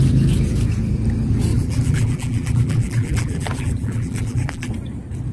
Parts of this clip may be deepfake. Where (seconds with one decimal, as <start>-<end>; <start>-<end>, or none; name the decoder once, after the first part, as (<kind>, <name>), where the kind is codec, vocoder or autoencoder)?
1.5-4.7 (vocoder, BigVGAN v2)